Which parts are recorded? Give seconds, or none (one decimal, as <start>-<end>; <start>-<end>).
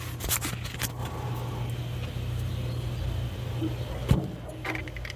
0.0-5.2